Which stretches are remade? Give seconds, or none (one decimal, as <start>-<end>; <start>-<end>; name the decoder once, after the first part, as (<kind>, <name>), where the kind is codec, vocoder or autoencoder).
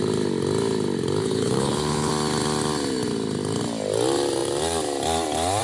1.2-2.1 (codec, HILCodec)